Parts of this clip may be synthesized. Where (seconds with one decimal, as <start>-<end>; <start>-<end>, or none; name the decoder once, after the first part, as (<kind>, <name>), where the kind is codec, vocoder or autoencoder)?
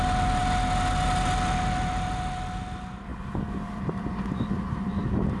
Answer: none